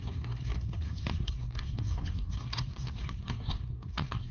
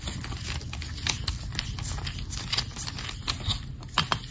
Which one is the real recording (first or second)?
second